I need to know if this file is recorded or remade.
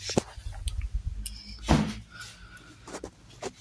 recorded